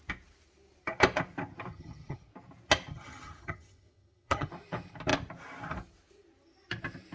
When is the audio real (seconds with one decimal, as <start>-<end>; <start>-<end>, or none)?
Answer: 0.0-1.7; 2.3-2.9; 4.5-7.1